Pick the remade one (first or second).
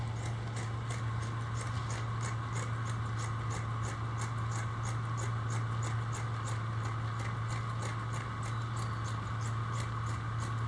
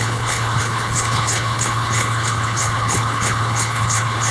second